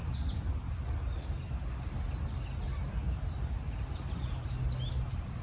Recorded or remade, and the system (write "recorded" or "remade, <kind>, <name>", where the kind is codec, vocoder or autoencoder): recorded